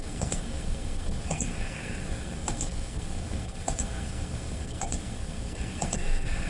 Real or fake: fake